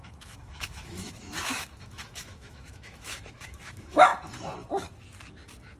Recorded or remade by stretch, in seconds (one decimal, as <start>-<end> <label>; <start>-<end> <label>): 0.0-4.1 remade; 4.1-5.8 recorded